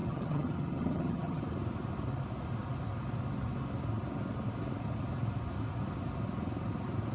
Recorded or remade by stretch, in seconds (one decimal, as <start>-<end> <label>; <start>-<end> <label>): 0.0-1.4 remade; 1.4-7.1 recorded